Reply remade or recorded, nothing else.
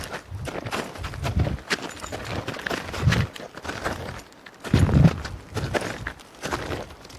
recorded